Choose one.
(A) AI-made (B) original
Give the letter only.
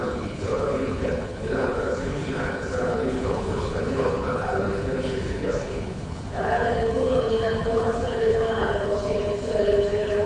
A